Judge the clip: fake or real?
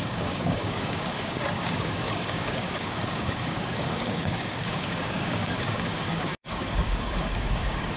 fake